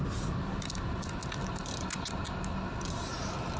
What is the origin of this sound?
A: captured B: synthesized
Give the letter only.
A